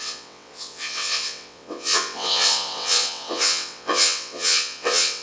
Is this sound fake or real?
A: fake